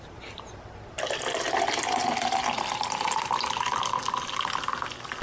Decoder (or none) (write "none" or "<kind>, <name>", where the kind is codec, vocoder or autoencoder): none